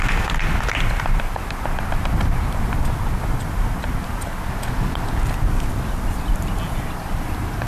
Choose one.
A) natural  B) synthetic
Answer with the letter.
A